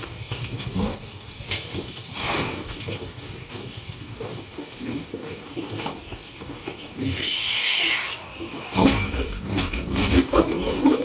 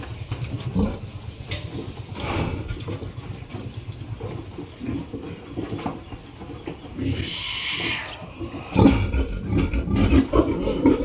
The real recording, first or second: second